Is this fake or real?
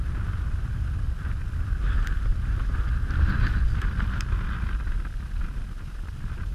real